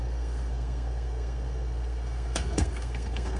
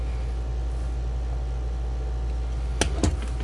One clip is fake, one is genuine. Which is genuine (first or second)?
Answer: second